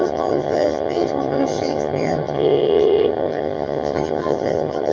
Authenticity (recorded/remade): remade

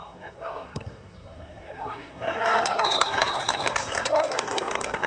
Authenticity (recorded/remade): remade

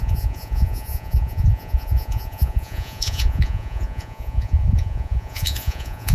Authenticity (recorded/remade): remade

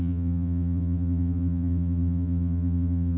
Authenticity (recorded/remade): remade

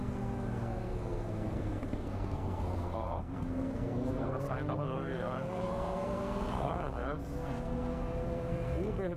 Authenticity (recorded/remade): remade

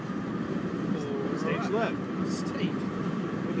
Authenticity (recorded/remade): recorded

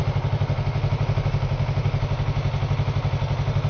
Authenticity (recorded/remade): recorded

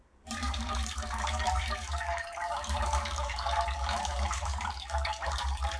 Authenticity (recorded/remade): remade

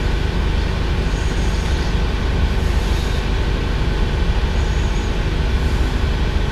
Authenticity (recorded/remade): recorded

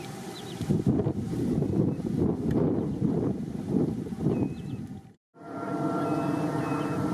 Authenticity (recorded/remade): remade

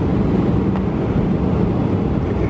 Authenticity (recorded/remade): recorded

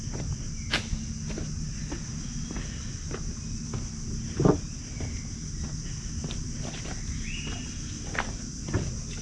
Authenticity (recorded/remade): recorded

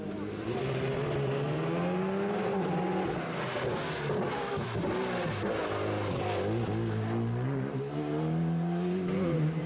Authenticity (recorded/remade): recorded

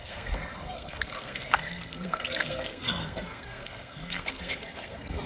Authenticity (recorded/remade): remade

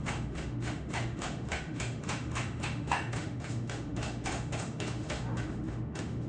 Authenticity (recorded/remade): remade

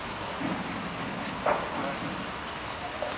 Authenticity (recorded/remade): recorded